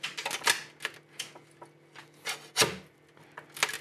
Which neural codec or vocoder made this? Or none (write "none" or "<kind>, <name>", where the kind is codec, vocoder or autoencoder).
none